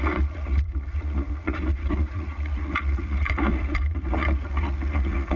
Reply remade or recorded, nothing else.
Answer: remade